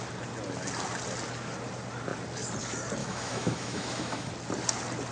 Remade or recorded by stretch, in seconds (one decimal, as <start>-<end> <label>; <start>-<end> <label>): 0.0-3.0 recorded; 3.0-4.3 remade; 4.3-5.1 recorded